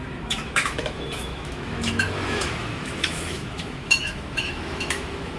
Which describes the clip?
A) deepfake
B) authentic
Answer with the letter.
A